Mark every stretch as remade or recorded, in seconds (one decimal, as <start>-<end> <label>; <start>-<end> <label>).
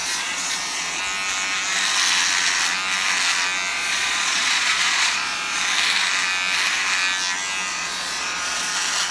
0.0-1.0 remade; 1.0-3.7 recorded; 3.7-5.6 remade; 5.6-7.7 recorded; 7.7-8.7 remade; 8.7-9.1 recorded